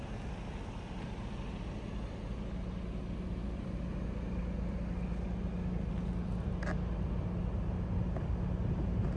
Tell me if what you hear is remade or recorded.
recorded